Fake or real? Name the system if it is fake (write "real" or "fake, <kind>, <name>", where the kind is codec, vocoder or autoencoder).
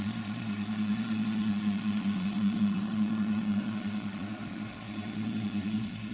fake, vocoder, Vocos